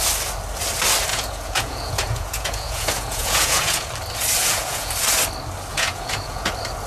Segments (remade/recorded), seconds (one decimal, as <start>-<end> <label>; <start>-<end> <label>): 0.0-1.1 recorded; 1.1-3.9 remade; 3.9-4.4 recorded; 4.4-4.9 remade; 4.9-5.7 recorded; 5.7-6.5 remade; 6.5-6.9 recorded